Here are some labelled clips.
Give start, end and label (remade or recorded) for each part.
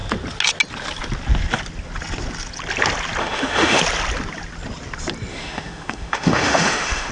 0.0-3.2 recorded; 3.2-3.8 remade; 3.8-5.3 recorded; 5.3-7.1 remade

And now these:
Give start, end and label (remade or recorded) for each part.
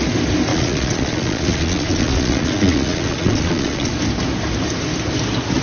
0.0-0.5 recorded; 0.5-3.9 remade; 3.9-5.6 recorded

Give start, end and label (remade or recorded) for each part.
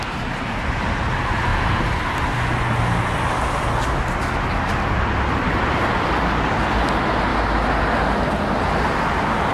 0.0-9.5 recorded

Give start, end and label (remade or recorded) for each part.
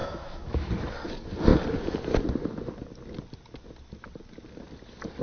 0.0-0.7 remade; 0.7-5.2 recorded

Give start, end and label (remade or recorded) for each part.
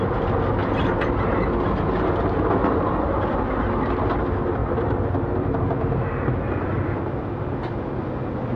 0.0-4.6 recorded; 4.6-6.2 remade; 6.2-8.6 recorded